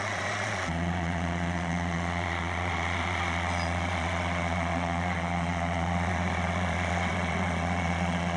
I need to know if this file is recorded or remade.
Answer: remade